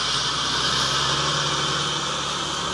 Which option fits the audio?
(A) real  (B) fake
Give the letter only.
A